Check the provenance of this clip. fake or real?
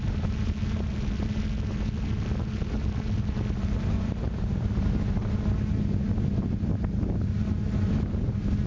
real